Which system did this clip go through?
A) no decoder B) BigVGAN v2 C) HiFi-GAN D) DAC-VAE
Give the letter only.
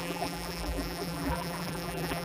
B